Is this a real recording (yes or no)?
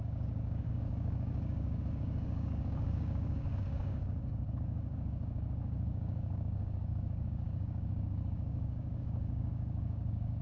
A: no